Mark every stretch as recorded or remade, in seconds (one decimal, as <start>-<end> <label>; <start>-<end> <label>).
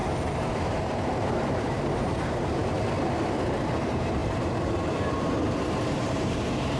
0.0-0.6 recorded; 0.6-6.8 remade